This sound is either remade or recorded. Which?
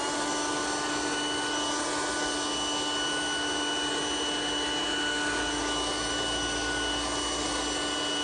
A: recorded